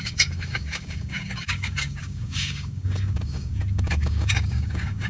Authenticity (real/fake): fake